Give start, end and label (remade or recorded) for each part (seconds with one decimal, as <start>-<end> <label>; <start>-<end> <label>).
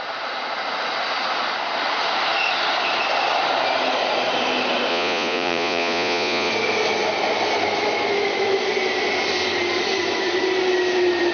0.0-4.9 recorded; 4.9-6.5 remade; 6.5-11.3 recorded